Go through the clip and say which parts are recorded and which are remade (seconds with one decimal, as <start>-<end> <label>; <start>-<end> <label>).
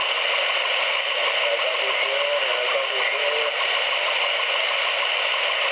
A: 0.0-5.7 recorded